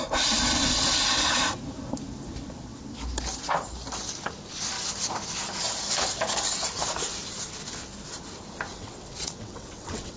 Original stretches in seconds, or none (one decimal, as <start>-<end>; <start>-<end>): 0.0-8.7